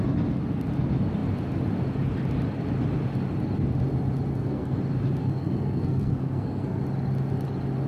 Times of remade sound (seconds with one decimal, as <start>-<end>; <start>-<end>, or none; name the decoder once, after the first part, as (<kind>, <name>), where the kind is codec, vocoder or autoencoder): 4.3-4.8 (codec, SNAC); 5.2-6.8